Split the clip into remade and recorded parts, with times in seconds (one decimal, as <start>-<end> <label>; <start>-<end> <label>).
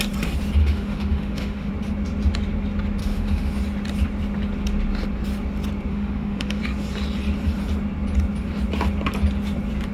0.0-0.6 recorded; 0.6-1.7 remade; 1.7-3.0 recorded; 3.0-3.5 remade; 3.5-5.9 recorded; 5.9-6.6 remade; 6.6-9.9 recorded